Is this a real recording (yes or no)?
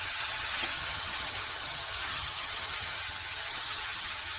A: no